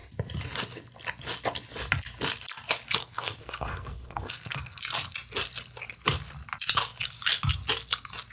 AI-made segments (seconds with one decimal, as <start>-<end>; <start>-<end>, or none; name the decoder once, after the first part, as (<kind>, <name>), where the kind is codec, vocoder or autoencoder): 3.0-4.8 (codec, SNAC)